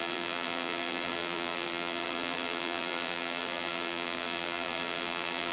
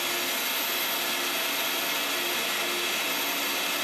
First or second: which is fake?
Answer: first